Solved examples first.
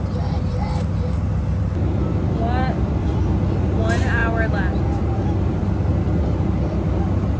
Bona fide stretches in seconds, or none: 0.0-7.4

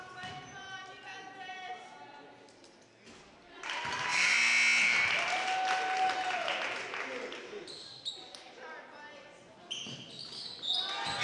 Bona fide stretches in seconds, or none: 0.0-11.2

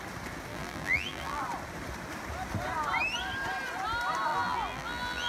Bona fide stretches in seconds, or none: 0.0-0.5; 1.4-4.3

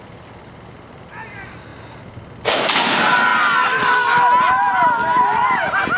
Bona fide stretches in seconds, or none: 0.0-6.0

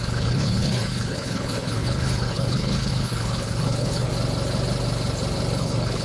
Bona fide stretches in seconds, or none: 4.1-5.6

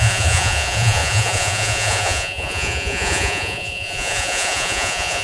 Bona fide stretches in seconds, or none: none